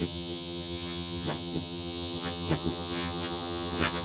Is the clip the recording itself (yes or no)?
no